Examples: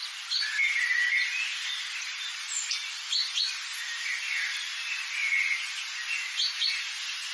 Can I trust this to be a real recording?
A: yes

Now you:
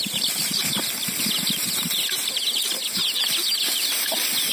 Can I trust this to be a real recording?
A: yes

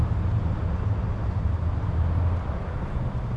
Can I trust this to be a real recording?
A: yes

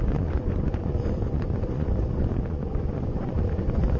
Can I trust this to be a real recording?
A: no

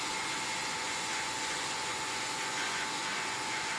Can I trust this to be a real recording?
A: no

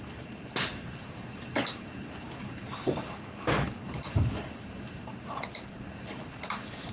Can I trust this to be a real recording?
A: no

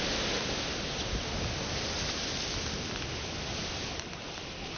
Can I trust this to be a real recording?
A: yes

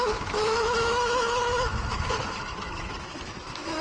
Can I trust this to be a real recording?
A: no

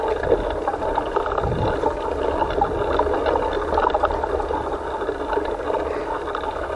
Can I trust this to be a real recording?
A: yes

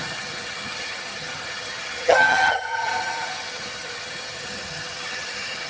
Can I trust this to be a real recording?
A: no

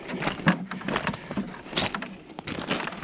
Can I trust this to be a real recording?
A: yes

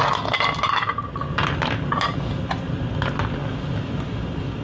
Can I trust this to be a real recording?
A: yes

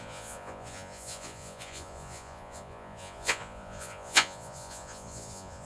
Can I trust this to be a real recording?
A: no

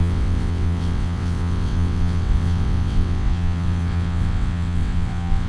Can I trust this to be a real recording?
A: no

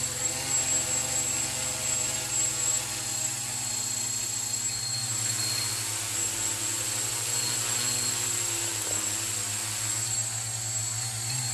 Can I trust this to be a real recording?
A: yes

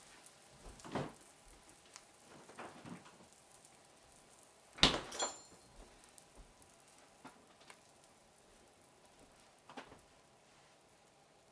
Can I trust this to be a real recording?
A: yes